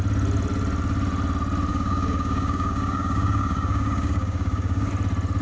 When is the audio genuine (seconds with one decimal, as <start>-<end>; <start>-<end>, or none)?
0.0-1.7; 4.9-5.4